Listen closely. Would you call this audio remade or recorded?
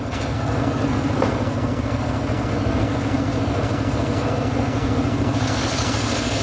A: remade